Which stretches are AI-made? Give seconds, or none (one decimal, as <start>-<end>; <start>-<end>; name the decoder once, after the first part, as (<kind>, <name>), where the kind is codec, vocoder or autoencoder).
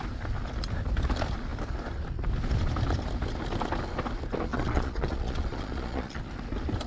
4.5-6.2 (vocoder, Vocos)